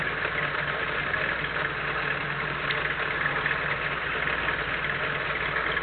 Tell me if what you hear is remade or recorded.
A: recorded